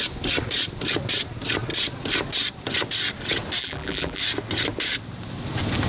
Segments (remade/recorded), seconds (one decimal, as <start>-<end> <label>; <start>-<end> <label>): 0.0-3.6 recorded; 3.6-4.2 remade; 4.2-5.9 recorded